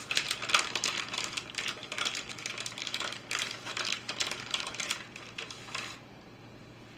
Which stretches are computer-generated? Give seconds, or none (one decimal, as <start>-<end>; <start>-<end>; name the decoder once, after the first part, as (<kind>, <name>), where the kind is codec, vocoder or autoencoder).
1.8-2.4 (codec, DAC); 2.8-4.9